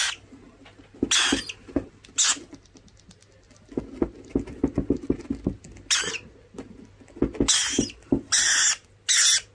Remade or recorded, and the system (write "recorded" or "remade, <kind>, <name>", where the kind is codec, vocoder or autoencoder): recorded